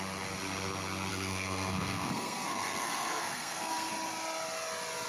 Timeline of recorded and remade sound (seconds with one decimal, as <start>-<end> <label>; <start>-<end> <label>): 0.0-1.1 recorded; 1.1-3.9 remade; 3.9-5.1 recorded